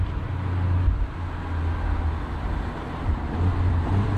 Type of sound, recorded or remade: recorded